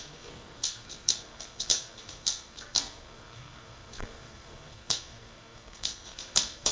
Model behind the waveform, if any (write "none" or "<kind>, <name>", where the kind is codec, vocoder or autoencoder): codec, SNAC